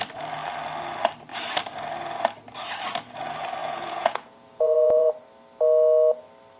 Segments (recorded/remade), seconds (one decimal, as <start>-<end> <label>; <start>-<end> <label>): 0.0-3.6 recorded; 3.6-5.1 remade; 5.1-6.6 recorded